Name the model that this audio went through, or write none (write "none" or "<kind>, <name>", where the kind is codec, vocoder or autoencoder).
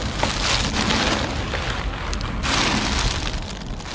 none